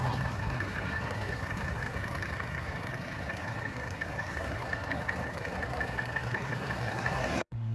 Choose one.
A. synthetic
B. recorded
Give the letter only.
A